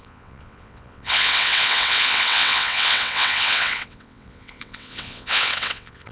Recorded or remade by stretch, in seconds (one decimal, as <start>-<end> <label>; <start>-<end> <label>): 0.0-6.1 remade